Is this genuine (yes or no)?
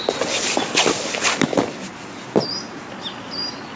yes